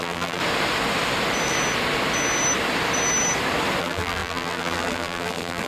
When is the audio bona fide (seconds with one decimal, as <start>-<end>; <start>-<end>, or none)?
0.4-3.8